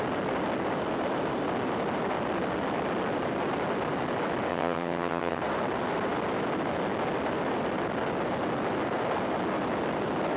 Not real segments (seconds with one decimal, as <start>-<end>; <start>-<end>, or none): 4.5-5.4